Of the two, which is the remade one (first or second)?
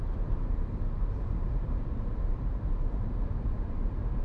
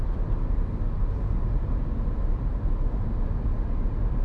first